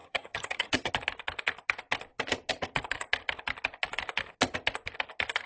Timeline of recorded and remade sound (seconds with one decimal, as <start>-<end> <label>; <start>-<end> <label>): 0.0-0.9 remade; 0.9-5.5 recorded